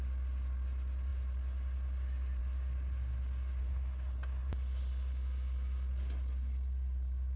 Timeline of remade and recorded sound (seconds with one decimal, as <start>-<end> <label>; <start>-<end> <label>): 0.0-3.6 recorded; 3.6-4.5 remade; 4.5-7.4 recorded

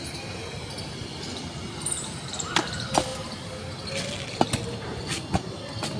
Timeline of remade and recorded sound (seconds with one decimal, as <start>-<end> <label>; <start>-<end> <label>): 0.0-6.0 recorded